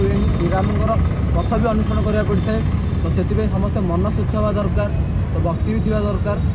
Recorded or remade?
recorded